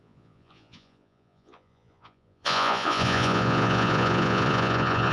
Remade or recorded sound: remade